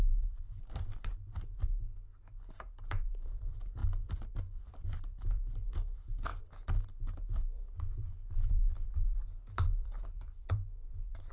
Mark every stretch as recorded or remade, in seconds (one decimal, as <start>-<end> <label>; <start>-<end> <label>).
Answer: 0.0-1.9 remade; 1.9-2.6 recorded; 2.6-6.3 remade; 6.3-6.8 recorded; 6.8-11.3 remade